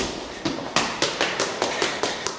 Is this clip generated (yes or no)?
no